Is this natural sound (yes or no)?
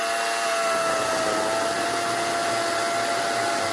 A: yes